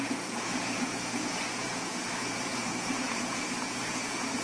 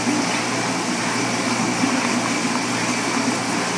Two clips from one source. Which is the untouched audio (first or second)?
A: second